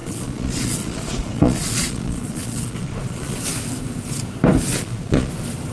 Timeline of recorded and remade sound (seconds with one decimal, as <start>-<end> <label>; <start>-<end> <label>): 0.0-3.4 remade; 3.4-4.7 recorded; 4.7-5.3 remade; 5.3-5.7 recorded